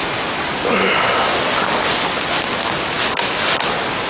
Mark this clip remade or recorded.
recorded